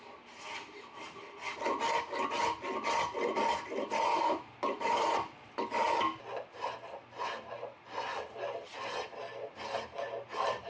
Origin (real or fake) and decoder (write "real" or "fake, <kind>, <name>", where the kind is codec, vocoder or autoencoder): real